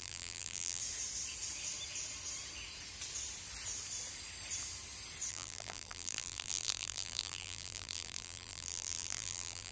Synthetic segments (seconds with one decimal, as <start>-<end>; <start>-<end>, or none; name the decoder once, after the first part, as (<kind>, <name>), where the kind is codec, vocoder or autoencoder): 0.0-0.8 (vocoder, BigVGAN v2); 5.3-9.7